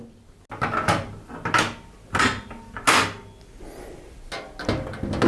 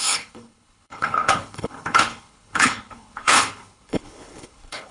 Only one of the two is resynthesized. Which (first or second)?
second